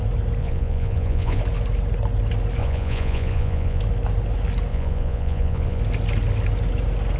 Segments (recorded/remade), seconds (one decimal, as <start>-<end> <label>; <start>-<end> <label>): 0.0-0.4 recorded; 0.4-1.4 remade; 1.4-2.6 recorded; 2.6-3.8 remade; 3.8-4.7 recorded; 4.7-5.8 remade; 5.8-7.2 recorded